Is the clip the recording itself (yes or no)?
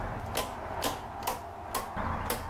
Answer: yes